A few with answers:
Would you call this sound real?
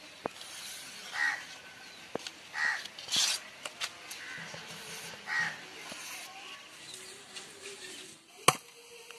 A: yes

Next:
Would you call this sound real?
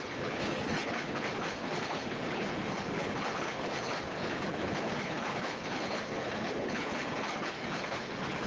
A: no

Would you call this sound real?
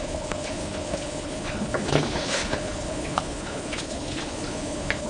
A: no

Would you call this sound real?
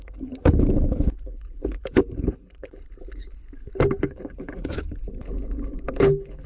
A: no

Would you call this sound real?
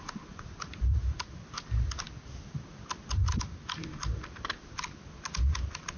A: yes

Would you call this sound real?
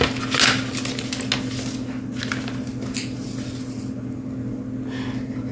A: yes